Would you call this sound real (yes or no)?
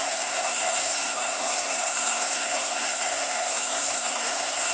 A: no